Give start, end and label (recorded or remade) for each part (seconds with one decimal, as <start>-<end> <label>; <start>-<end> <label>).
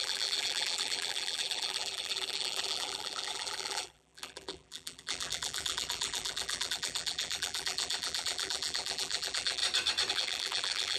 0.0-9.6 remade; 9.6-10.1 recorded; 10.1-11.0 remade